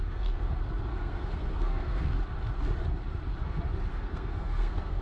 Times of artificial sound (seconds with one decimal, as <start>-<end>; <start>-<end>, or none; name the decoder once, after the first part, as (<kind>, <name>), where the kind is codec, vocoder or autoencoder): 0.0-0.5 (codec, SNAC); 0.9-2.2; 3.9-5.0